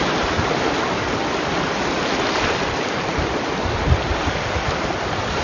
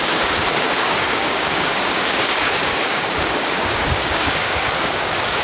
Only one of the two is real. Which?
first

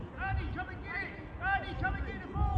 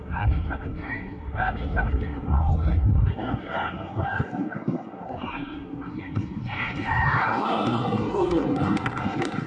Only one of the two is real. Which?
first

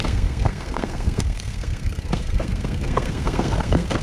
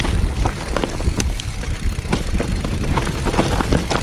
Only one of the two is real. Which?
second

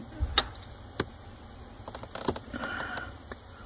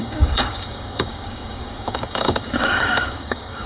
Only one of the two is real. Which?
first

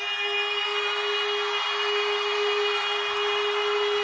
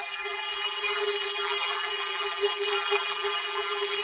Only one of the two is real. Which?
first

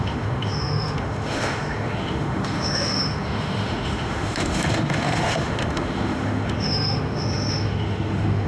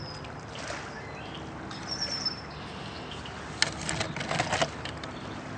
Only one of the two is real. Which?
second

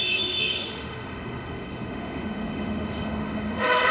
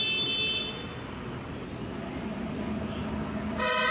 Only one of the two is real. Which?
second